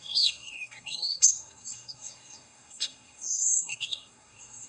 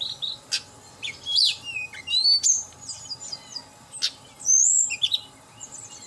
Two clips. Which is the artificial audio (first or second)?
first